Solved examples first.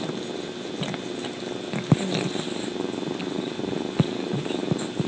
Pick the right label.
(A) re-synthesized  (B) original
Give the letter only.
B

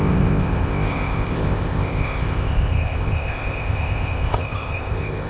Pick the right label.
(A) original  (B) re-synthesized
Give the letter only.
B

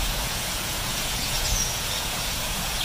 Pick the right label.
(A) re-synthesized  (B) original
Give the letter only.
A